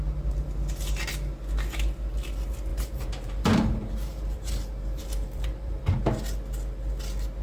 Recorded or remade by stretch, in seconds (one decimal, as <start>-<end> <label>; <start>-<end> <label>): 0.0-2.7 recorded; 2.7-6.0 remade; 6.0-7.4 recorded